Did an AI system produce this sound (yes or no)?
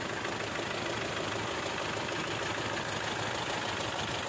no